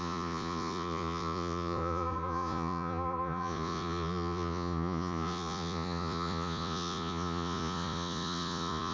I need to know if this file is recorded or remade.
remade